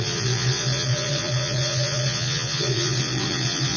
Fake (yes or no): yes